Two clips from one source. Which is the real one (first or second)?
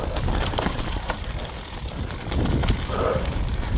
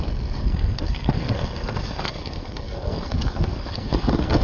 first